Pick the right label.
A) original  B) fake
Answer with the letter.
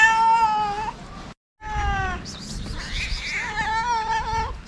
A